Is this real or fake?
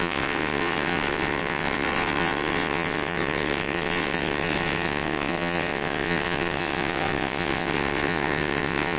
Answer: fake